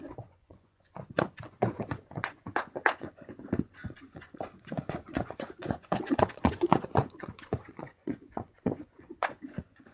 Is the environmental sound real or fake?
fake